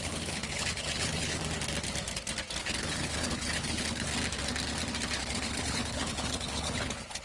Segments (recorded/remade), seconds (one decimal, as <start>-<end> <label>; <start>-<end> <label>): 0.0-1.4 remade; 1.4-2.6 recorded; 2.6-4.1 remade; 4.1-5.2 recorded; 5.2-7.2 remade